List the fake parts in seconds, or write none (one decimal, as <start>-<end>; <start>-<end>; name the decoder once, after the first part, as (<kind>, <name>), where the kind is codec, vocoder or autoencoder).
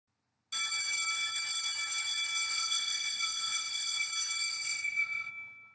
2.5-4.1 (codec, ZipCodec); 4.5-5.3